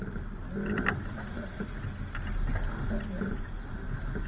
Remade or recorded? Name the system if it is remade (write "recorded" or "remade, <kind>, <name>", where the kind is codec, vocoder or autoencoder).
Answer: recorded